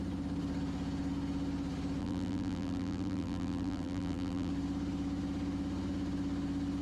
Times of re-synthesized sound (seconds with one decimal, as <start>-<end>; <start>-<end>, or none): 2.0-4.5